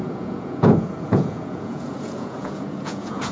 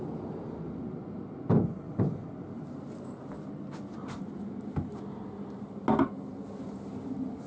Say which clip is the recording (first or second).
second